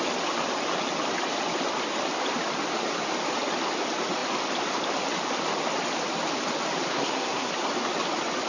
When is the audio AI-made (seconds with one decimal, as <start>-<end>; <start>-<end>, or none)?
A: 6.9-7.5